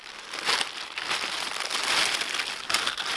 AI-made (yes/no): no